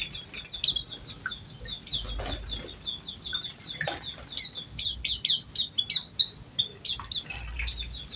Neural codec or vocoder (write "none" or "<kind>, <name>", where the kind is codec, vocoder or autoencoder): none